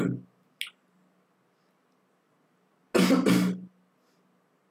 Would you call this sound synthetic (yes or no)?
no